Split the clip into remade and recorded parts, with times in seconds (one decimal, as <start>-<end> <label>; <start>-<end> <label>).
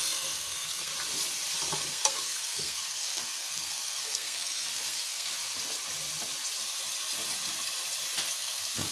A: 0.0-0.9 remade; 0.9-1.9 recorded; 1.9-5.3 remade; 5.3-8.3 recorded; 8.3-8.9 remade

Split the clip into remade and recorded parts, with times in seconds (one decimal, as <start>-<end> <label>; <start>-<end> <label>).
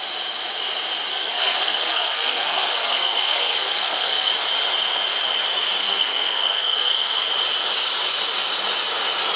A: 0.0-1.1 recorded; 1.1-4.3 remade; 4.3-5.8 recorded; 5.8-7.3 remade; 7.3-9.4 recorded